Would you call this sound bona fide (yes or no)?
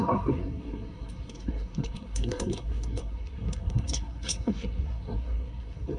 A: no